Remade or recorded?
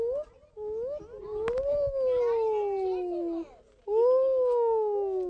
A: recorded